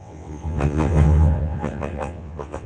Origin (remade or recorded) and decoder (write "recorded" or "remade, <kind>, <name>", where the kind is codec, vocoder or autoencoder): remade, vocoder, WaveNeXt